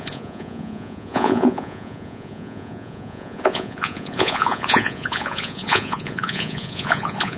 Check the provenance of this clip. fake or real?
fake